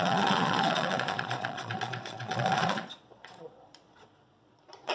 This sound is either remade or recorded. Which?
remade